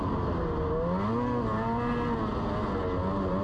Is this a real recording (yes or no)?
yes